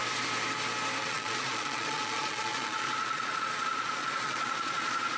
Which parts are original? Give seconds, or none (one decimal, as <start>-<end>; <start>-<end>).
0.0-1.0